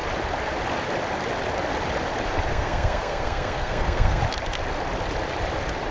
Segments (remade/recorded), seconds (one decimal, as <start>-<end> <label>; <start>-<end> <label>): 0.0-2.5 recorded; 2.5-4.2 remade; 4.2-5.9 recorded